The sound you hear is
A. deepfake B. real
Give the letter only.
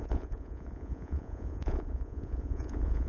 A